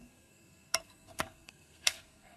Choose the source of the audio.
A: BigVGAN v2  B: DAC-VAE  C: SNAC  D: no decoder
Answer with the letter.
C